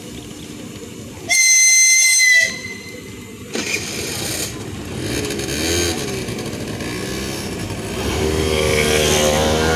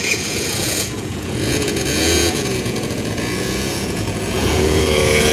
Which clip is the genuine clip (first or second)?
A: first